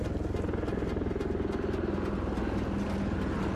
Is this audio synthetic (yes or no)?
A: no